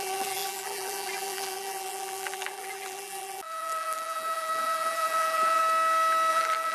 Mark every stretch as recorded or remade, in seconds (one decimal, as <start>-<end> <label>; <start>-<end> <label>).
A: 0.0-5.6 remade; 5.6-6.3 recorded; 6.3-6.7 remade